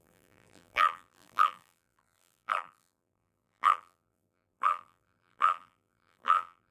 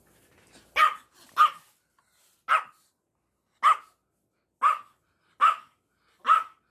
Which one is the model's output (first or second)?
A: first